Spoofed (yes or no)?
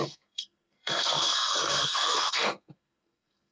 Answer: yes